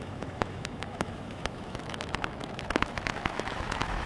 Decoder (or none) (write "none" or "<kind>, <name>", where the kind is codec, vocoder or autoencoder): autoencoder, DAC-VAE